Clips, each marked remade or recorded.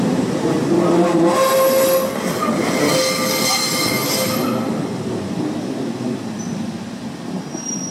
recorded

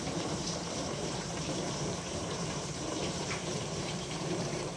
remade